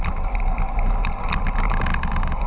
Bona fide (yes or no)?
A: yes